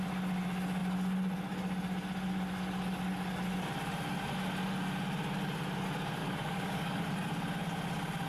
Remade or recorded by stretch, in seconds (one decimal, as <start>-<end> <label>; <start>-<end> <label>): 0.0-6.2 recorded; 6.2-7.0 remade; 7.0-8.3 recorded